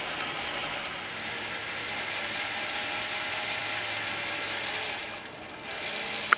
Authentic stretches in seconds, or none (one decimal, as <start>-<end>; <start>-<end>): 0.0-6.4